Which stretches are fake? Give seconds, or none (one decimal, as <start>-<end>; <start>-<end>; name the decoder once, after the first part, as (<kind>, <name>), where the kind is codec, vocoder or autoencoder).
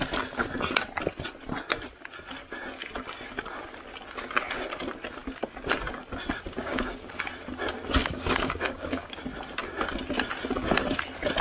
6.6-7.1 (codec, DAC); 8.0-9.2